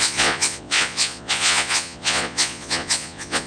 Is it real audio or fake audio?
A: fake